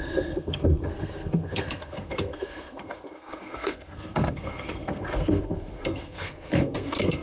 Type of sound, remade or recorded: remade